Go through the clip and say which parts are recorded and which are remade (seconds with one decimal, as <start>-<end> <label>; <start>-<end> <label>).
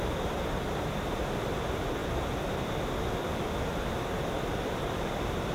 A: 0.0-5.5 recorded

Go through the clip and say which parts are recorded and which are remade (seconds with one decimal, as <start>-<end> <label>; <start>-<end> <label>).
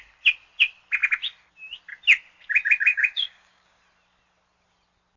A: 0.0-2.9 recorded; 2.9-3.8 remade; 3.8-5.2 recorded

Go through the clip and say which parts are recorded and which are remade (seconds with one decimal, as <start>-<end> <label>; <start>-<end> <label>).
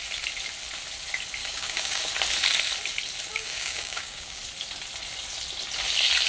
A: 0.0-1.4 recorded; 1.4-2.0 remade; 2.0-3.3 recorded; 3.3-4.4 remade; 4.4-6.3 recorded